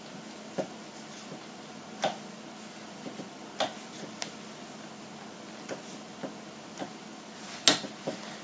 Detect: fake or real real